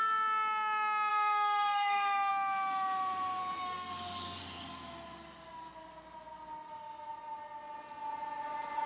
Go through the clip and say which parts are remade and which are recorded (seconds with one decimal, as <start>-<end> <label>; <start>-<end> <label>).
0.0-1.1 recorded; 1.1-2.3 remade; 2.3-3.4 recorded; 3.4-3.9 remade; 3.9-8.9 recorded